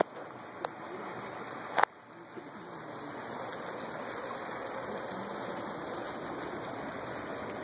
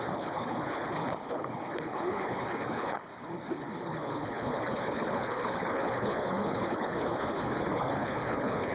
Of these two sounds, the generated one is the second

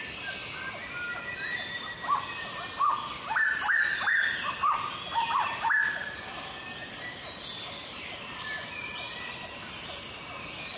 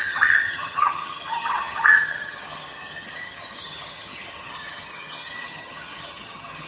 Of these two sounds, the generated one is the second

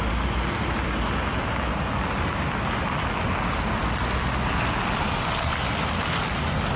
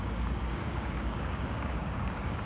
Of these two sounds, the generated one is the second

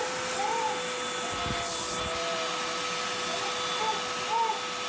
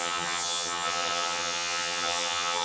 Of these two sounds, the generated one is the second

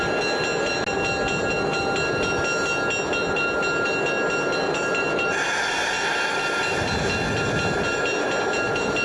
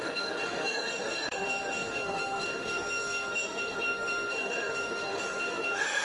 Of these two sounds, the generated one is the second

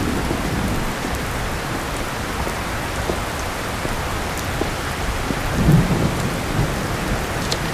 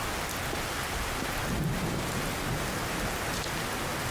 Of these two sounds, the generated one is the first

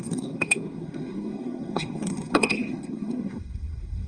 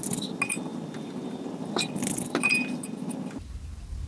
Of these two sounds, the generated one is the first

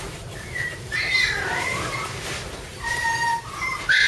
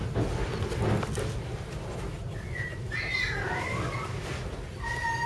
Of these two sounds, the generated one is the first